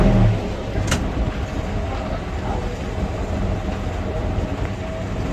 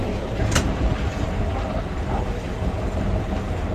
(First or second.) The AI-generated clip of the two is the second